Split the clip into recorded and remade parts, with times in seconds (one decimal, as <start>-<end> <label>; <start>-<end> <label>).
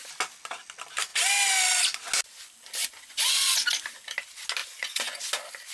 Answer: 0.0-2.8 recorded; 2.8-3.7 remade; 3.7-4.6 recorded; 4.6-5.2 remade; 5.2-5.7 recorded